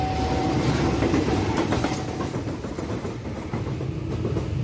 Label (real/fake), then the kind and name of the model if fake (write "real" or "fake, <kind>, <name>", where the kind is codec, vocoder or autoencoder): real